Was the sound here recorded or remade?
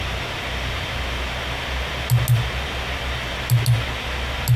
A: recorded